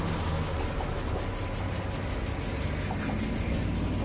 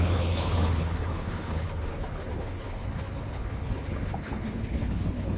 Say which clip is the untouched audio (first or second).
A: first